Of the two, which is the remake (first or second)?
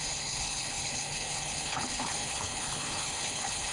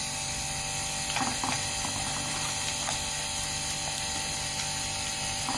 first